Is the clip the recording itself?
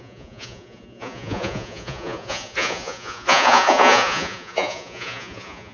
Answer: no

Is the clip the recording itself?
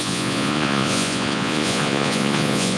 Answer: no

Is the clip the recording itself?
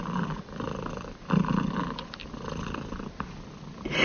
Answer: yes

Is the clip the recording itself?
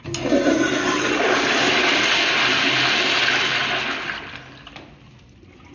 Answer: yes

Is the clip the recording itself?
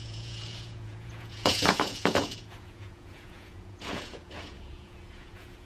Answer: no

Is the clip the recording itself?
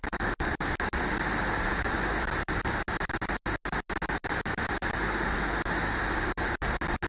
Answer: yes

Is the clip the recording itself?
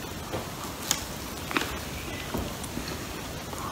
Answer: yes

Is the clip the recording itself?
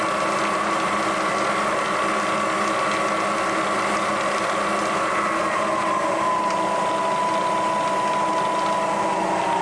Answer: yes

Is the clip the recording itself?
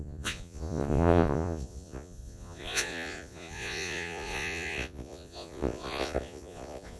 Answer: no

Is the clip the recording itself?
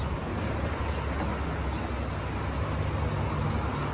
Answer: yes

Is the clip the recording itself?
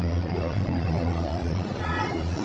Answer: no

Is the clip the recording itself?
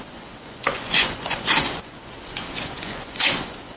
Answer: no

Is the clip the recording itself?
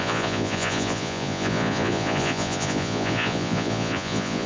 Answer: no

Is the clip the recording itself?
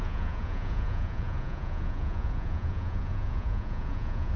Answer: no